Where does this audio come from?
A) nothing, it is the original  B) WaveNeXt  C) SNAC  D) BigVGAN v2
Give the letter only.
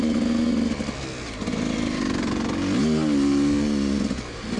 A